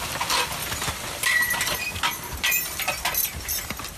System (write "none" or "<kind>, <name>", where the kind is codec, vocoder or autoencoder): none